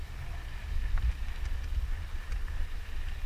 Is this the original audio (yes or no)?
yes